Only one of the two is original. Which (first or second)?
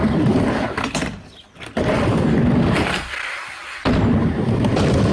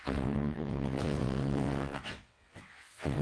first